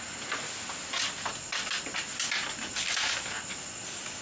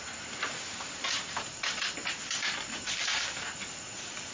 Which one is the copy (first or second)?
second